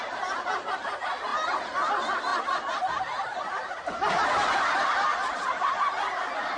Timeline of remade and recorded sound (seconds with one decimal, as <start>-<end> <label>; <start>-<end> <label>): 0.0-6.6 recorded